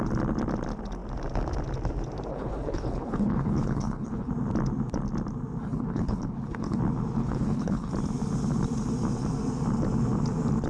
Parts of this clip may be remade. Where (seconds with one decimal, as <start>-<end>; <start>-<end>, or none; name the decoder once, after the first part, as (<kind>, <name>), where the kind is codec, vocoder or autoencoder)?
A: 2.3-4.3 (codec, HILCodec); 5.6-6.8; 7.2-7.9